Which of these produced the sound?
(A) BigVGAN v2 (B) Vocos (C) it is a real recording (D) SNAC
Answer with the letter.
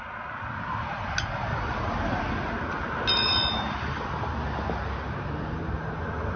C